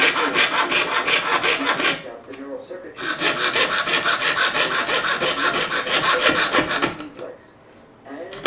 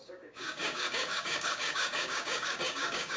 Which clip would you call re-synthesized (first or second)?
second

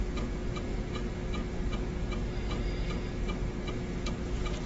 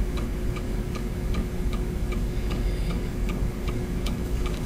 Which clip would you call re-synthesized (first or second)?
second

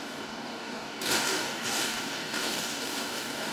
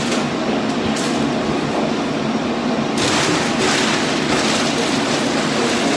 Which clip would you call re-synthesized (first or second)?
first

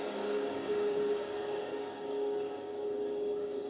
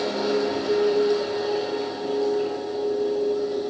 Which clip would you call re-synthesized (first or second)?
first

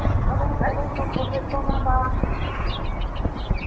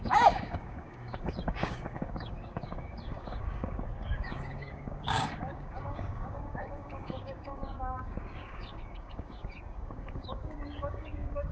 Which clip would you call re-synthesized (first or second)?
second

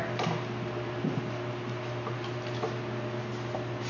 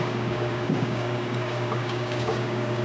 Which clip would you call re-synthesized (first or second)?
second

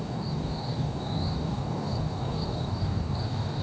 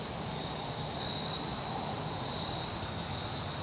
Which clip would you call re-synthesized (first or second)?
first